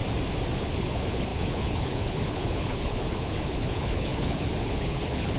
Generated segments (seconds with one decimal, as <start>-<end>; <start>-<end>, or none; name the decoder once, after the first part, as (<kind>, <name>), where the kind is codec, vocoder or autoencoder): 0.6-5.4 (codec, HILCodec)